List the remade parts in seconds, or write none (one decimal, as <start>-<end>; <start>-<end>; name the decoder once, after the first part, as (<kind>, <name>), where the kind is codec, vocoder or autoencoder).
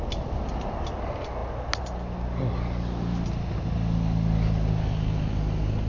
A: none